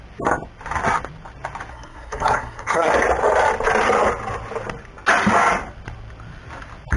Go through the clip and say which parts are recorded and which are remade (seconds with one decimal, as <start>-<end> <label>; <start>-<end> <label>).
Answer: 0.0-1.7 recorded; 1.7-2.9 remade; 2.9-7.0 recorded